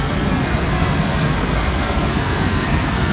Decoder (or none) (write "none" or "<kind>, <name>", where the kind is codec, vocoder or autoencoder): codec, SNAC